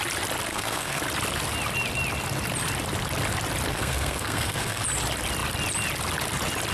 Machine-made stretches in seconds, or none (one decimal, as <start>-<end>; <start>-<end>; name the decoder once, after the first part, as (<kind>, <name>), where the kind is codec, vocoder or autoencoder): 0.5-1.0 (codec, SNAC); 3.7-4.8